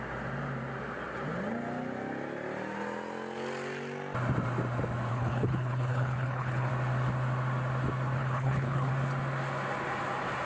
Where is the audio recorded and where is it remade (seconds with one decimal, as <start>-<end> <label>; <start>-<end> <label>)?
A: 0.0-5.1 recorded; 5.1-6.7 remade; 6.7-8.2 recorded; 8.2-8.9 remade; 8.9-10.5 recorded